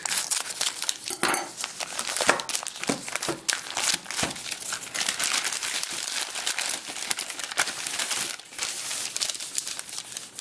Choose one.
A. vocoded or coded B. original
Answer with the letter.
B